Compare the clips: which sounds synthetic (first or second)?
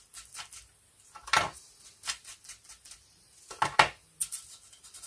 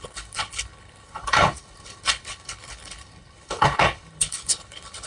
second